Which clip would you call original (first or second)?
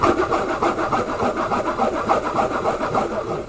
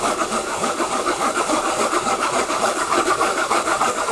first